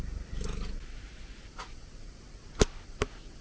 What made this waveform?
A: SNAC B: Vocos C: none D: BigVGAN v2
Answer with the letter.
C